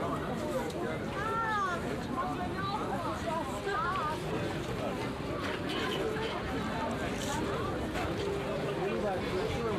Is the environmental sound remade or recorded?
recorded